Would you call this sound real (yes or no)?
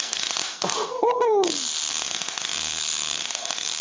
no